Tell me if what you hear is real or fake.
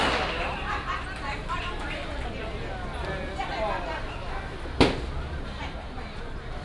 real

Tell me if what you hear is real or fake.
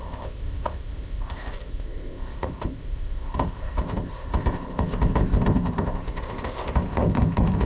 fake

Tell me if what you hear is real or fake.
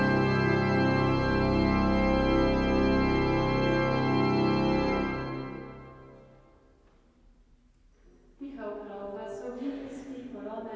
real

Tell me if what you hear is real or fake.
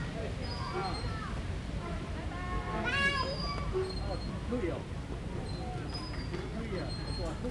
real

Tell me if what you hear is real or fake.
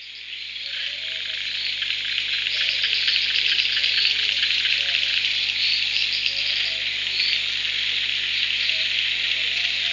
real